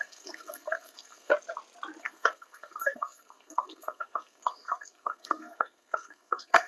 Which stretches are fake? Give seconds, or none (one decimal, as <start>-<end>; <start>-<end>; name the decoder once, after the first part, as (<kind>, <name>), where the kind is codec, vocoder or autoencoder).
0.0-1.3 (codec, SNAC); 2.0-6.7